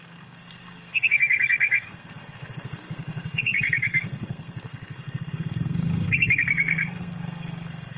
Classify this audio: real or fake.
fake